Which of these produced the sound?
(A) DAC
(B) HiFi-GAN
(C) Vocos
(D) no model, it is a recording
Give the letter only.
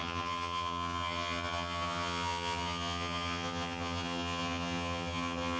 B